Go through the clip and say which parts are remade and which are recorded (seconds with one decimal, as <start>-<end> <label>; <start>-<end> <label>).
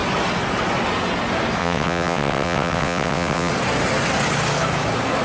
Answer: 0.0-1.6 recorded; 1.6-3.5 remade; 3.5-5.2 recorded